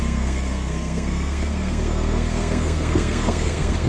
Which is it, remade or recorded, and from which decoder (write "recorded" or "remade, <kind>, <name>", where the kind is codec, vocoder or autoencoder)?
remade, codec, SNAC